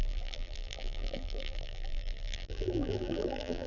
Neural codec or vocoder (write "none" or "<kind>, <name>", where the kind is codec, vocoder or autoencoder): vocoder, BigVGAN v2